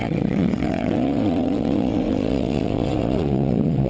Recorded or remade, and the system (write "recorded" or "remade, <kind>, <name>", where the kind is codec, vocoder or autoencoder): remade, vocoder, WaveNeXt